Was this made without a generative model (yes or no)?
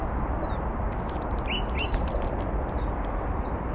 yes